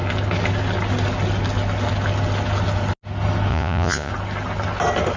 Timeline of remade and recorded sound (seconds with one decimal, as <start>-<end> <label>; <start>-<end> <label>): 0.0-3.5 recorded; 3.5-4.1 remade; 4.1-5.2 recorded